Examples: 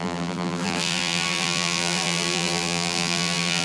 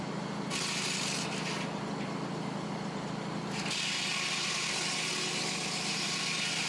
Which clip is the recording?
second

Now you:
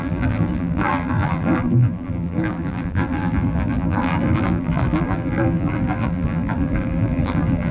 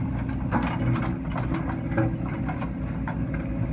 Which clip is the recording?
second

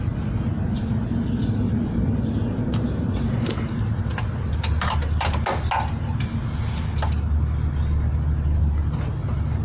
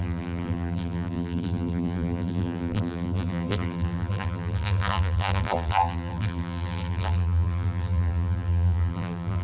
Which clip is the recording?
first